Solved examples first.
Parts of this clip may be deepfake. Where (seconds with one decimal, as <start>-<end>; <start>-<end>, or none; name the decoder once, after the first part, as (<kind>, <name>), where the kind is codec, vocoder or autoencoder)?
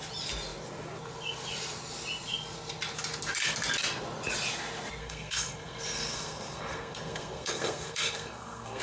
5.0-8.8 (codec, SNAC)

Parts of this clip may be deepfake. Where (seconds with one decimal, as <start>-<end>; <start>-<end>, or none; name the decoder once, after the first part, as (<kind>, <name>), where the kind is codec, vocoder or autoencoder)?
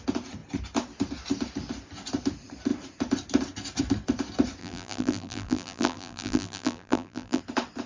4.6-7.4 (vocoder, BigVGAN v2)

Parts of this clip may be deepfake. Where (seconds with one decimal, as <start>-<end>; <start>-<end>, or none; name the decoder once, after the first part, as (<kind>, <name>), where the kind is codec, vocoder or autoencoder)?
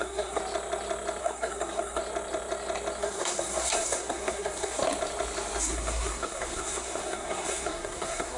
0.0-0.4 (codec, SNAC); 1.2-2.0; 3.0-4.8; 5.6-8.4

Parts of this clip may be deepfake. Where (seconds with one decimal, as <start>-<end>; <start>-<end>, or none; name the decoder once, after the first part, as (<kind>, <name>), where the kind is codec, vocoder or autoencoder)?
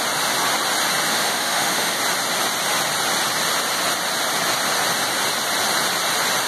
1.1-2.0 (autoencoder, DAC-VAE)